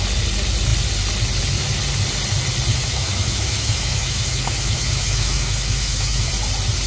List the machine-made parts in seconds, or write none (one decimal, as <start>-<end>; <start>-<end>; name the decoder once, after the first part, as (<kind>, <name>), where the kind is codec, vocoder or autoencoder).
2.7-6.3 (autoencoder, DAC-VAE)